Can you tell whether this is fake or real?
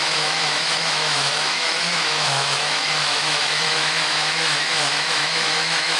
fake